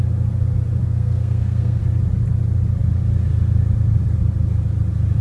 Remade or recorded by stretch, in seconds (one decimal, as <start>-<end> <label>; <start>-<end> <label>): 0.0-0.8 recorded; 0.8-1.8 remade; 1.8-5.2 recorded